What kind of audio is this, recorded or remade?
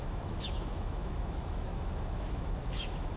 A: remade